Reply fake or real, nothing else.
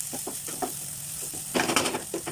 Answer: real